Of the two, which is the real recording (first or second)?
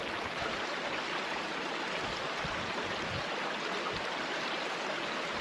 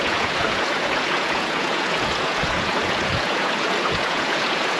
first